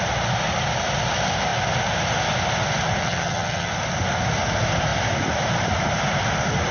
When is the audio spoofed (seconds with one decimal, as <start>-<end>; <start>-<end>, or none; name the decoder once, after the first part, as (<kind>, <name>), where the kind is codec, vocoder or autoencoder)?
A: 3.0-3.7 (vocoder, HiFi-GAN)